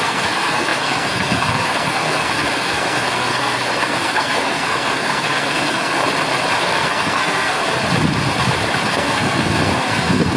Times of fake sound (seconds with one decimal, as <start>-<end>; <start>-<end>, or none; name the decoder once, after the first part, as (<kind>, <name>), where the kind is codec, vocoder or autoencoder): 0.0-6.0 (codec, SNAC); 6.6-7.6; 8.9-10.4